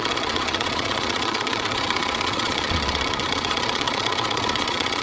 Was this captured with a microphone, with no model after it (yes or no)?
no